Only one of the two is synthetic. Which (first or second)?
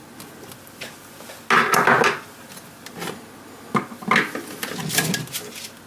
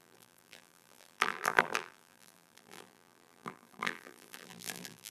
second